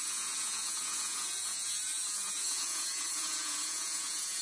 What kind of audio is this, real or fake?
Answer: fake